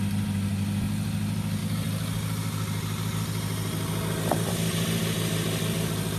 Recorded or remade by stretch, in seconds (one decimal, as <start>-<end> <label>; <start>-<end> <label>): 0.0-6.2 recorded